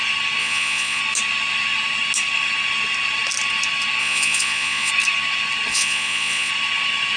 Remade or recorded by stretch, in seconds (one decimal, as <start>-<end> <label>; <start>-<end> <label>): 0.0-0.4 recorded; 0.4-1.0 remade; 1.0-4.0 recorded; 4.0-4.9 remade; 4.9-5.7 recorded; 5.7-6.5 remade; 6.5-7.2 recorded

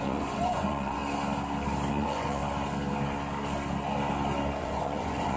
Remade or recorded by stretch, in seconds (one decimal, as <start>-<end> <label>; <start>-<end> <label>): 0.0-1.0 remade; 1.0-1.9 recorded; 1.9-2.4 remade; 2.4-4.6 recorded; 4.6-5.4 remade